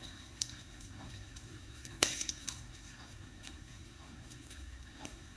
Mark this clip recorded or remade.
remade